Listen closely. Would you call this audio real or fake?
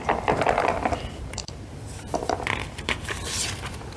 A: fake